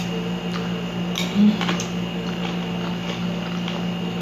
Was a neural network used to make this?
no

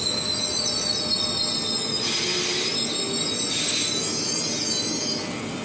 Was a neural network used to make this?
no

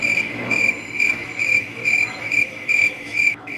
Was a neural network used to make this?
yes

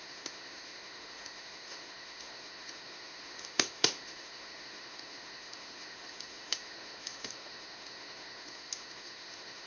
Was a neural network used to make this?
yes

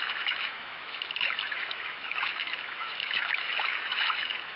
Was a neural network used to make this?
yes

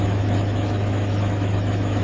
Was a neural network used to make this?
yes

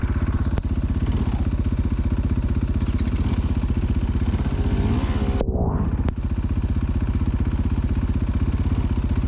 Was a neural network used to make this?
no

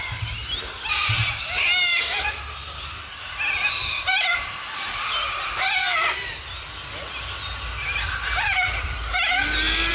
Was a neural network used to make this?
no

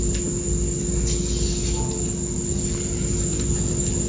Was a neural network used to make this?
no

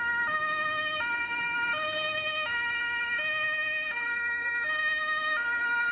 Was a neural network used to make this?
yes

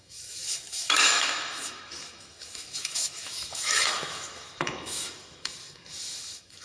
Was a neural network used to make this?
yes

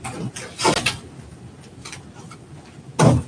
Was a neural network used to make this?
no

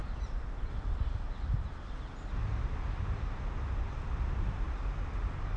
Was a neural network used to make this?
no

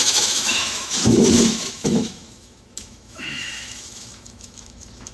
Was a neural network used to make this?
yes